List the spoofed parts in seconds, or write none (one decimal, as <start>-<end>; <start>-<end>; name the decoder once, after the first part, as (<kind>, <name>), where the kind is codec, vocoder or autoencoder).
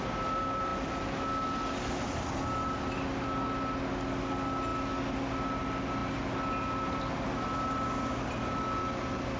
none